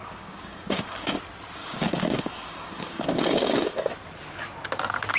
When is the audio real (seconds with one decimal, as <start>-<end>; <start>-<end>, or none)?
1.2-1.6; 3.9-5.2